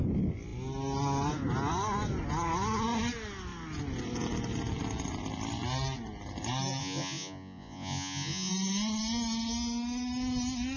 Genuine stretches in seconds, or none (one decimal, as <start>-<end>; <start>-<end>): 0.0-6.8; 8.5-10.8